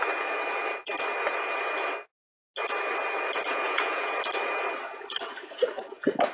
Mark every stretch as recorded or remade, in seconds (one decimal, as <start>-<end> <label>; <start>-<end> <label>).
0.0-3.5 recorded; 3.5-4.1 remade; 4.1-6.3 recorded